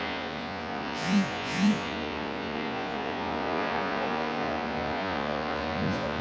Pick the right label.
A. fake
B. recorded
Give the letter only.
A